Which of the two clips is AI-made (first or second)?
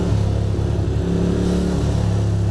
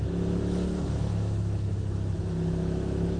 second